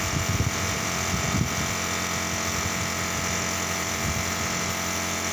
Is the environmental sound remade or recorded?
recorded